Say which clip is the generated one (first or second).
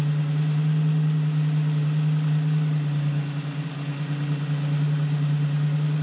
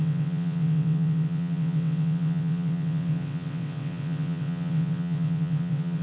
second